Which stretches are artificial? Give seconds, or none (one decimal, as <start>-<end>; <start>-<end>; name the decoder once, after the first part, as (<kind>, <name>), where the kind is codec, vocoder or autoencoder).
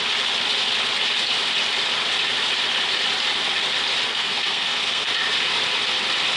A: 4.1-5.1 (codec, SNAC)